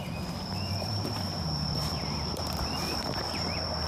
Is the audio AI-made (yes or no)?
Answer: yes